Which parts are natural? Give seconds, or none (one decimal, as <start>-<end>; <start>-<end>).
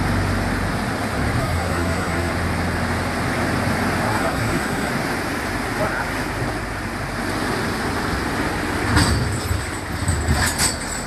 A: 0.0-1.4; 2.3-4.1; 4.9-11.1